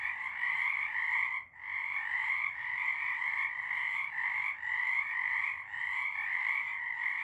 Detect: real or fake fake